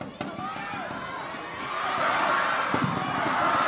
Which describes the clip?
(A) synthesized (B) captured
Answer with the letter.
B